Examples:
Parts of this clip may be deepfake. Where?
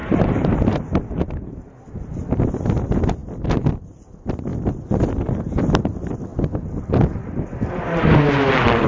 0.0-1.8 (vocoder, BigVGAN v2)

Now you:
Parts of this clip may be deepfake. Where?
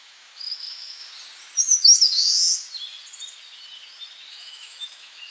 0.0-1.0 (autoencoder, DAC-VAE); 1.6-2.5; 4.3-5.3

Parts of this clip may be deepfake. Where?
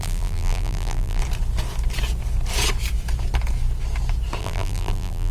0.0-1.2 (vocoder, BigVGAN v2); 4.4-5.3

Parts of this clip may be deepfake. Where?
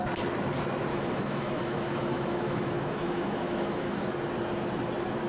0.9-4.1 (autoencoder, DAC-VAE)